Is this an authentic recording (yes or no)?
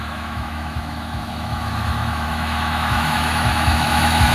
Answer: no